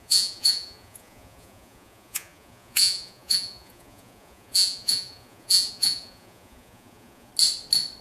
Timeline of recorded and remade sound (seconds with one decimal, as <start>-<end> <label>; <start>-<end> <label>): 0.0-7.3 remade; 7.3-8.0 recorded